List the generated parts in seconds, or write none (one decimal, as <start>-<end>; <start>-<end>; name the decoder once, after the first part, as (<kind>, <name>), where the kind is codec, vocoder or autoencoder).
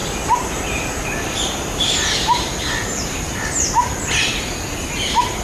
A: 0.0-3.2 (vocoder, BigVGAN v2)